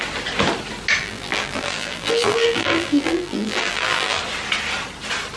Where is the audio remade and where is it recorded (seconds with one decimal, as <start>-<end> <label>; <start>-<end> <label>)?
0.0-1.0 recorded; 1.0-4.2 remade; 4.2-5.4 recorded